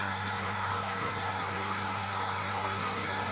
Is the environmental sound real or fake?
fake